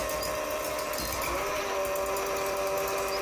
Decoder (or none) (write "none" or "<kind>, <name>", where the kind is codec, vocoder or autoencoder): none